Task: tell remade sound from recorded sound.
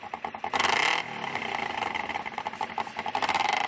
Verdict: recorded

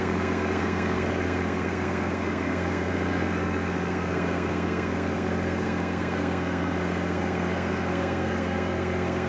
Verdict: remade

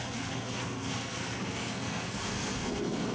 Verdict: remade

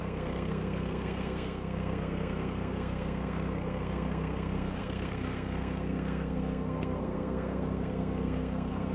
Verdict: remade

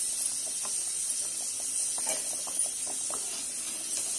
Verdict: recorded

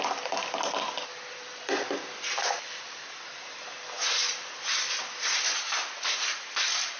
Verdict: recorded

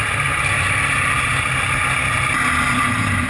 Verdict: recorded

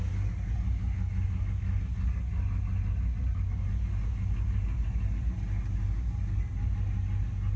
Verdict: recorded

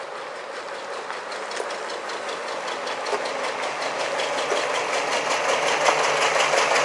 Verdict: recorded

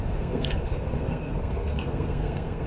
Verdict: remade